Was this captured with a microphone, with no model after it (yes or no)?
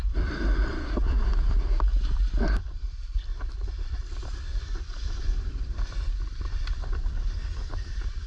no